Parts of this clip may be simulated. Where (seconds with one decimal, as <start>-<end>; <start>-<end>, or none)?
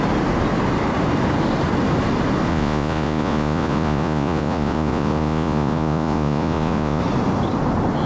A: 2.5-7.0